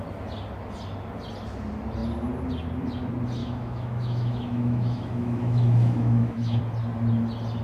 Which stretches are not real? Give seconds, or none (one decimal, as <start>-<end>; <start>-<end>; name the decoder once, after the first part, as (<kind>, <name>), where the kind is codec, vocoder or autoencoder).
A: 3.4-6.6 (autoencoder, DAC-VAE)